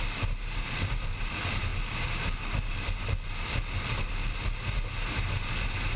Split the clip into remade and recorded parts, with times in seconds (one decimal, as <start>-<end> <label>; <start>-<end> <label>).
0.0-6.0 recorded